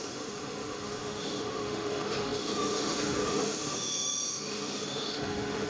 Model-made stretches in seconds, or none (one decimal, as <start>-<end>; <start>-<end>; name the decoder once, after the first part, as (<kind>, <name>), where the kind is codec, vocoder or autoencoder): 0.0-5.7 (autoencoder, DAC-VAE)